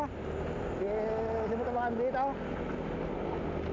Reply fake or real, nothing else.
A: real